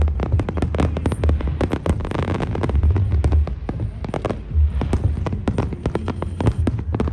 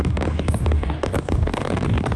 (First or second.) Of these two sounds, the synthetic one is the second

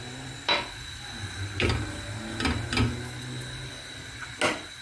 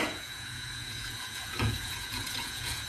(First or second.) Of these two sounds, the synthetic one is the second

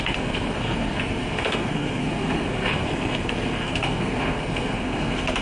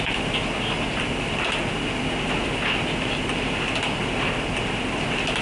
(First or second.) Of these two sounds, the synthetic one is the first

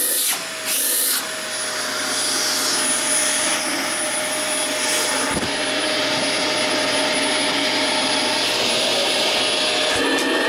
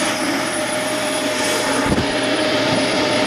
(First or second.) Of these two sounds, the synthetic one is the second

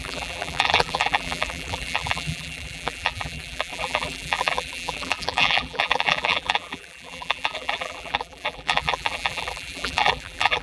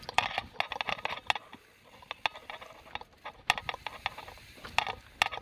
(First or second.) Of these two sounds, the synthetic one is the first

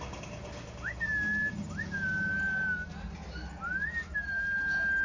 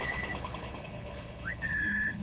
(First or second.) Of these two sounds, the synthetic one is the second